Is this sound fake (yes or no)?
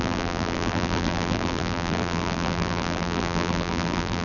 yes